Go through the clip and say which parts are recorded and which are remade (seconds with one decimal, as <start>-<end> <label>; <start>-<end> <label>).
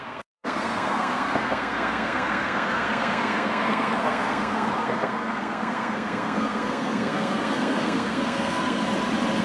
0.0-8.8 remade; 8.8-9.4 recorded